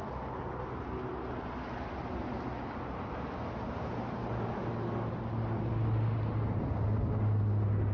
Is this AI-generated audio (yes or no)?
no